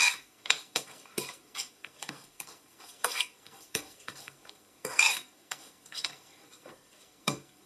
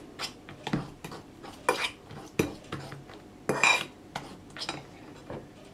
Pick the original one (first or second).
second